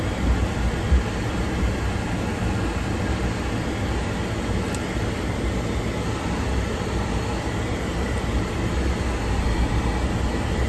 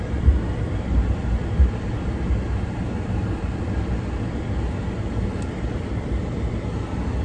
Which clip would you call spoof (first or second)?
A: second